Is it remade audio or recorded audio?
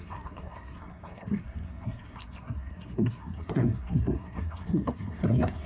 remade